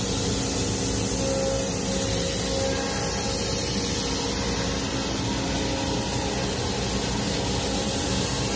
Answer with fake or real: real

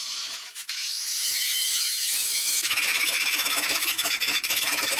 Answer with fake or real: fake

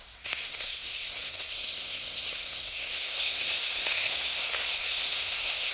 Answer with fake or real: fake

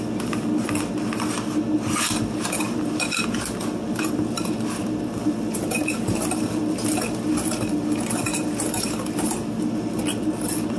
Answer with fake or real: real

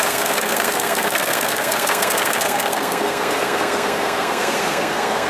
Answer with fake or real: fake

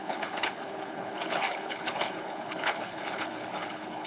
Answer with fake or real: fake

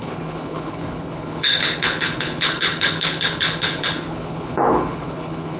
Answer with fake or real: fake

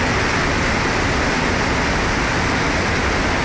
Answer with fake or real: real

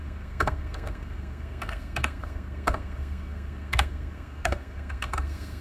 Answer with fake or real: fake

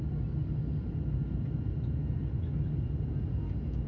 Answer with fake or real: real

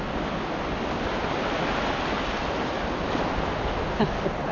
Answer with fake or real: real